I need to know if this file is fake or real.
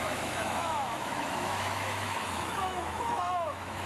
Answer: fake